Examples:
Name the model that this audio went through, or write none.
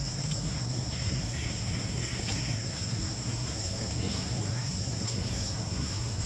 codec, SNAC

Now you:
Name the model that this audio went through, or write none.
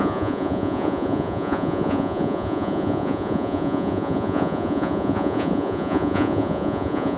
vocoder, Vocos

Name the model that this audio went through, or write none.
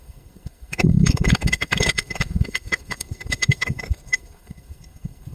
codec, SNAC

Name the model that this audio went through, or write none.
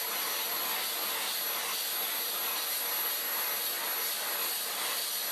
none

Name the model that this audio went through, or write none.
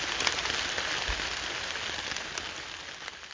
none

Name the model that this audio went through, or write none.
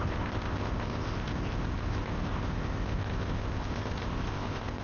codec, ZipCodec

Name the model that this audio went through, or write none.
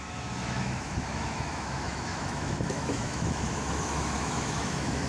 autoencoder, DAC-VAE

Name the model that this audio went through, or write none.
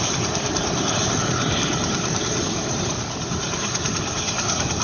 vocoder, BigVGAN v2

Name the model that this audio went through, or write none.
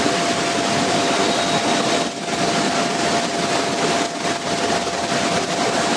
none